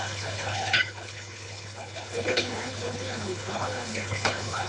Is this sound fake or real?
fake